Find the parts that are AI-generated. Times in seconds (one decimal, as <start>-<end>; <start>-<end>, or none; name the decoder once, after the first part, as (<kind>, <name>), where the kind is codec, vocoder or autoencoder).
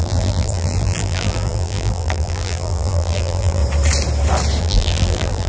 0.0-3.6 (vocoder, BigVGAN v2); 4.6-5.5